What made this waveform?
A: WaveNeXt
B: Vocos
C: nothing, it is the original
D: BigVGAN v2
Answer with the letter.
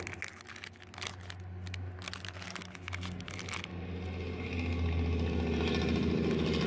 C